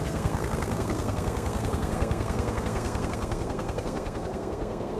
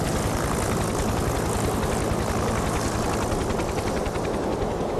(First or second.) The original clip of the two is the second